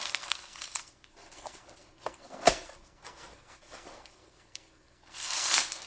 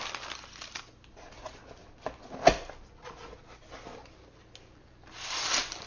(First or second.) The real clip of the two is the second